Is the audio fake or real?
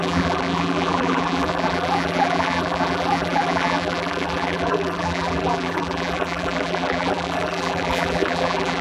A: fake